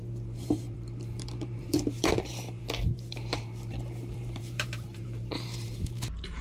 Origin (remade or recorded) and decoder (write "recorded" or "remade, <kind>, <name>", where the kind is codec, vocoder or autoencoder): remade, vocoder, BigVGAN v2